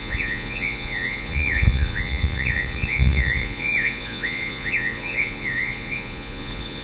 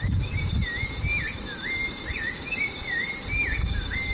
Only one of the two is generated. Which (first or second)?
first